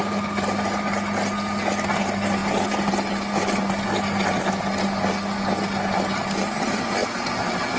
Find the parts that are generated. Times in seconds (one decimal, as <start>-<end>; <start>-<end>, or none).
none